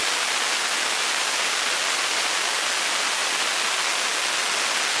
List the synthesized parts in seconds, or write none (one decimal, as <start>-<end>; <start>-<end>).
none